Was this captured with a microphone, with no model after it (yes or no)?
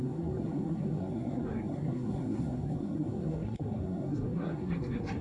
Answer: no